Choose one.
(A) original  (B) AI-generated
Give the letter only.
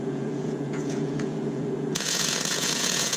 B